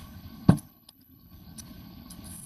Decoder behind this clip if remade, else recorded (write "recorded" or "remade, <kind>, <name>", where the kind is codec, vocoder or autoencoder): remade, codec, HILCodec